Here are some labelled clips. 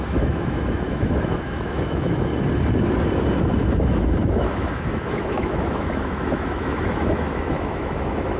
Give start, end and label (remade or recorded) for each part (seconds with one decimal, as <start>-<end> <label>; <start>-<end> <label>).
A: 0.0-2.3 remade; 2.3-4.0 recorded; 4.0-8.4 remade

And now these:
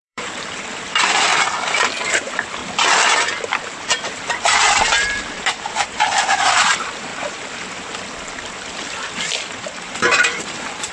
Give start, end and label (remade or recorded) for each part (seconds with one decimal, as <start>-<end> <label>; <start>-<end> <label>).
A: 0.0-1.3 remade; 1.3-2.1 recorded; 2.1-2.6 remade; 2.6-3.6 recorded; 3.6-7.1 remade; 7.1-9.5 recorded; 9.5-10.9 remade

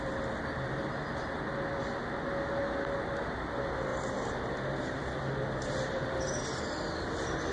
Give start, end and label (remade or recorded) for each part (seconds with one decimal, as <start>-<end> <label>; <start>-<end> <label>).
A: 0.0-3.9 recorded; 3.9-6.6 remade; 6.6-7.5 recorded